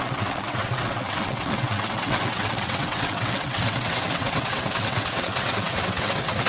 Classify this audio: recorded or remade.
remade